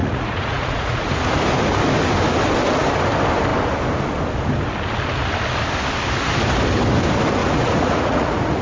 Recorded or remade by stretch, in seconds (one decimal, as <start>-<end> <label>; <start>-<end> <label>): 0.0-1.1 remade; 1.1-7.4 recorded; 7.4-8.6 remade

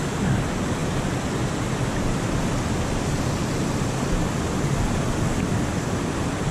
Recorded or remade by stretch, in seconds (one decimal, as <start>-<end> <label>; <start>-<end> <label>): 0.0-6.5 recorded

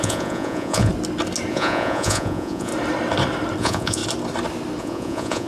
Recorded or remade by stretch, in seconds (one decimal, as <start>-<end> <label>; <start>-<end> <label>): 0.0-0.9 remade; 0.9-1.5 recorded; 1.5-2.7 remade; 2.7-3.6 recorded; 3.6-4.0 remade; 4.0-4.8 recorded; 4.8-5.5 remade